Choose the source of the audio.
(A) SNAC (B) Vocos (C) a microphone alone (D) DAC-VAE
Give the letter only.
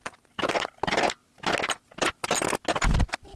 C